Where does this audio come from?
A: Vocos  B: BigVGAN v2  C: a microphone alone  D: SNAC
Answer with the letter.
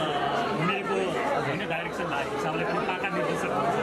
C